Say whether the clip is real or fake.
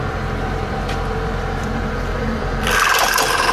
fake